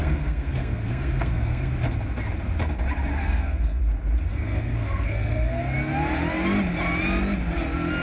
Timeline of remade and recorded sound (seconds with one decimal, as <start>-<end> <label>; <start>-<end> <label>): 0.0-1.7 remade; 1.7-3.2 recorded; 3.2-3.8 remade; 3.8-4.3 recorded; 4.3-5.6 remade; 5.6-8.0 recorded